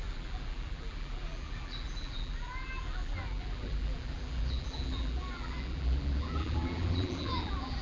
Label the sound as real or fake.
fake